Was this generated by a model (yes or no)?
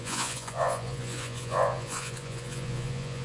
yes